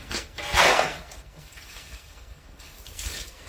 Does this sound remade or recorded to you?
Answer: remade